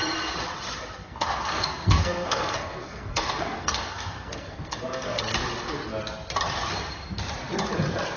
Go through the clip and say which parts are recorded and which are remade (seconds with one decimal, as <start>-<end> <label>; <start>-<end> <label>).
0.0-1.0 recorded; 1.0-5.2 remade; 5.2-8.2 recorded